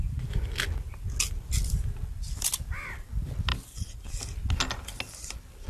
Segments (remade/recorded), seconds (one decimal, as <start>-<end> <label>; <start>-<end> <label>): 0.0-5.7 recorded